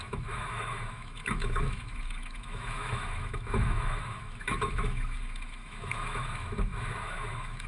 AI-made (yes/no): yes